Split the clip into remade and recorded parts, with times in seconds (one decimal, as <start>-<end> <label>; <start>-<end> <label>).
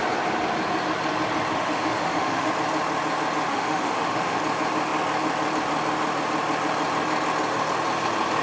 0.0-1.6 recorded; 1.6-2.5 remade; 2.5-3.5 recorded; 3.5-4.4 remade; 4.4-8.4 recorded